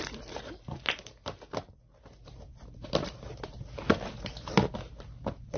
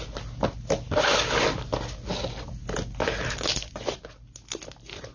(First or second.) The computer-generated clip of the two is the first